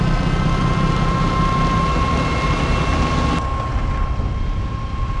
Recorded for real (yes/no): yes